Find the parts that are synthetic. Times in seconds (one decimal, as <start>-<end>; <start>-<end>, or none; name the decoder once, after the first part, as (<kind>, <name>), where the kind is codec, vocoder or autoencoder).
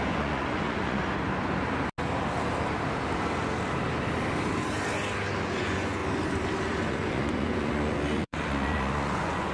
0.0-1.0 (vocoder, Vocos); 5.6-6.0; 6.9-9.5